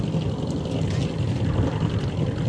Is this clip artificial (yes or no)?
no